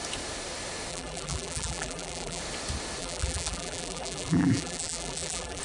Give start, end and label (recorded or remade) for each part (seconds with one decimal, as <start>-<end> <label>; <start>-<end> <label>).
0.0-0.9 recorded; 0.9-2.4 remade; 2.4-3.0 recorded; 3.0-5.6 remade